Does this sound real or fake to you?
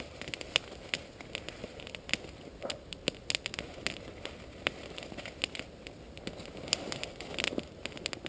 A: real